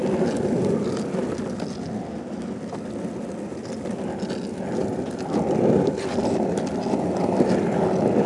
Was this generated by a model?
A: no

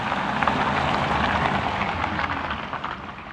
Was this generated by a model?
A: no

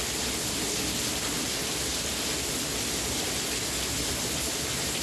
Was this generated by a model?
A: no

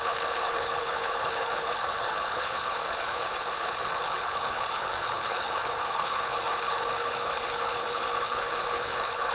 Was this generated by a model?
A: yes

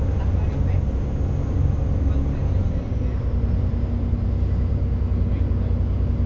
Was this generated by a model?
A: no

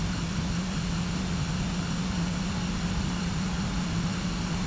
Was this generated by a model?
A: no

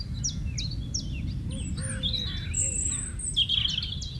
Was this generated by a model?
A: no